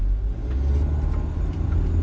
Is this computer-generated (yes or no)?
no